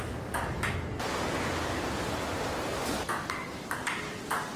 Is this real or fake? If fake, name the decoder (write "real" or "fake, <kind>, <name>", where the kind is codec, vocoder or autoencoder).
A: real